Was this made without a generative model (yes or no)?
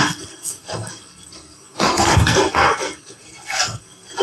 no